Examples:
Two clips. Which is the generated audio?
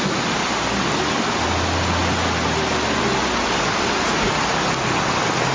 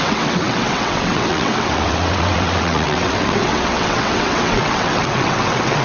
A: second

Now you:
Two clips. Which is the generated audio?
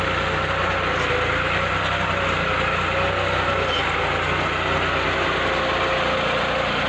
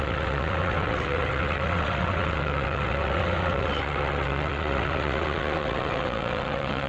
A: second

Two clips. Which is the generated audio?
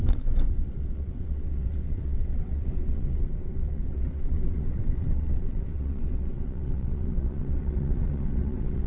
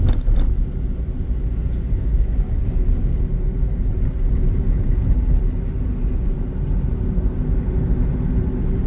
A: first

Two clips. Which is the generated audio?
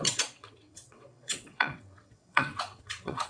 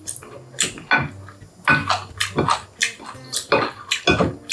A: first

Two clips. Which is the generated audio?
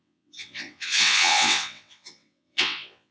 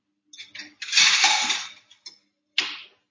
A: first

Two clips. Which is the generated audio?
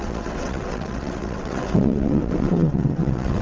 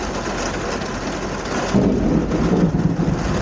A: first